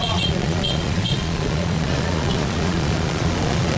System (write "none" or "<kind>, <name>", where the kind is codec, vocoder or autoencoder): vocoder, Vocos